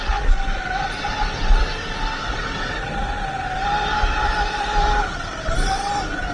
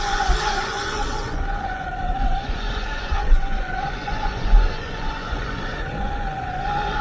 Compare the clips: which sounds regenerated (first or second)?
second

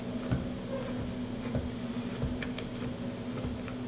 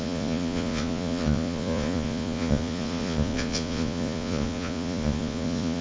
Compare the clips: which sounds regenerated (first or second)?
second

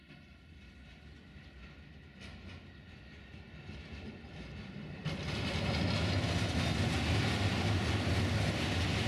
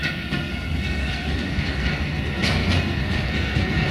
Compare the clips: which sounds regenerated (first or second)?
second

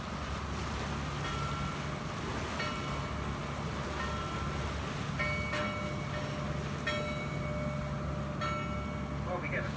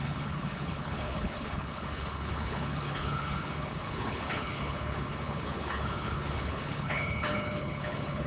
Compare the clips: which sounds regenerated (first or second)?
second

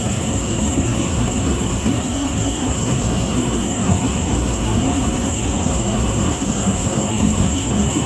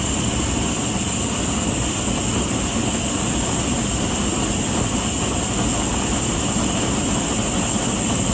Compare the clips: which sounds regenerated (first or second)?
first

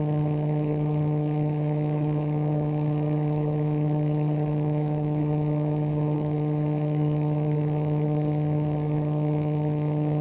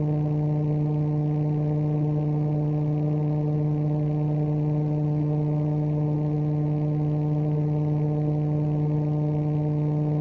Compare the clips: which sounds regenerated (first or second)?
first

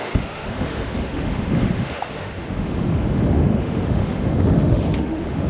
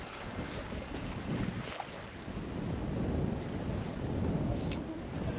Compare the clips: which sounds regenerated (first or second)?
first